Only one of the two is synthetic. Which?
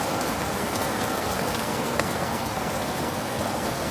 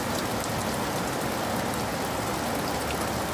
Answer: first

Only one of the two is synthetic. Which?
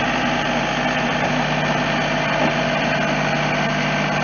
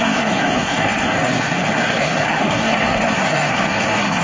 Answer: second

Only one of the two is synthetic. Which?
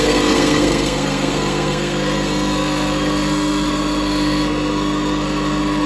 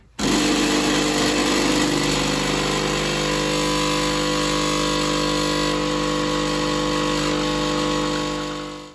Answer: first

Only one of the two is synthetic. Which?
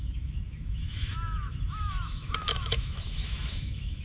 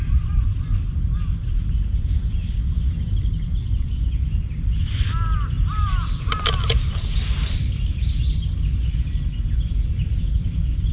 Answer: first